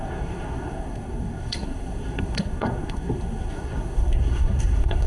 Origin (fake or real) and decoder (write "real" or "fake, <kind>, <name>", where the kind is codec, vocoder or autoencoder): fake, codec, SNAC